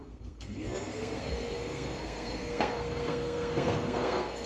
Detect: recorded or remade remade